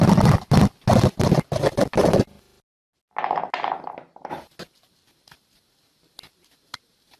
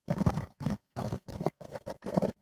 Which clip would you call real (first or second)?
first